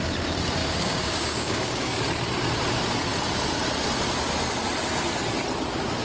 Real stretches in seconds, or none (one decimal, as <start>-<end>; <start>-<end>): 0.0-0.6; 2.0-6.0